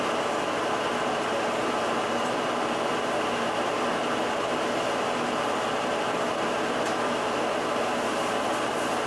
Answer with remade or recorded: recorded